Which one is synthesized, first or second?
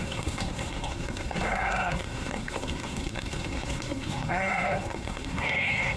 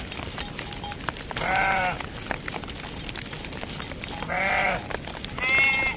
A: first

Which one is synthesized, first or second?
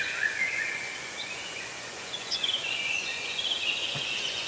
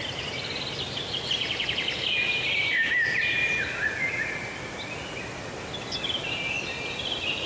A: first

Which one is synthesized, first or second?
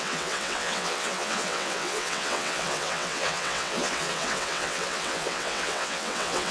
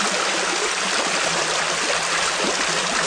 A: first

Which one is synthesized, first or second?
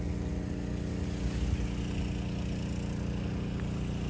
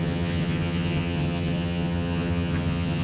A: second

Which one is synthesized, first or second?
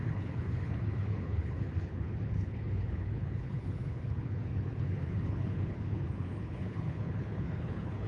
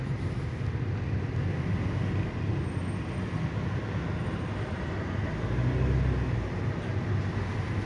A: first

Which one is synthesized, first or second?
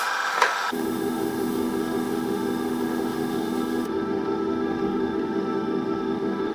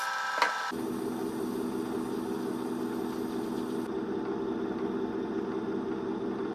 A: first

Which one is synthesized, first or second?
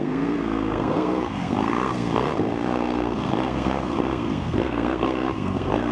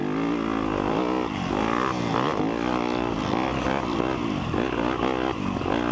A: first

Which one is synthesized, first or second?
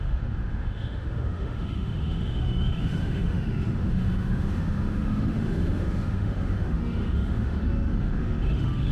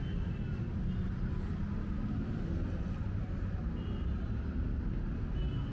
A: first